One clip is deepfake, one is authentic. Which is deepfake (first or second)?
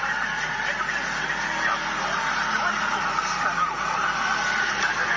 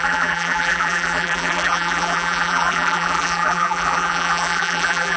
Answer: second